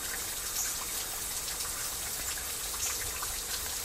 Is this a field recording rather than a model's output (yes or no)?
yes